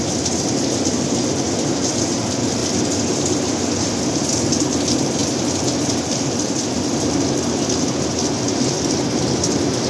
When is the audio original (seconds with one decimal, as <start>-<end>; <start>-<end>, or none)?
0.0-9.9